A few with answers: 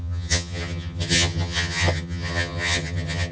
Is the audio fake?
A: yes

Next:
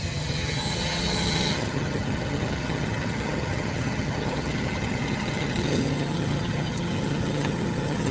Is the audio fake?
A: yes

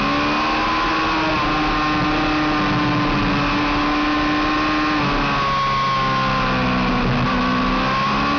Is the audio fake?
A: no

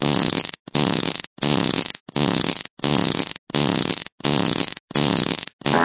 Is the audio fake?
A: no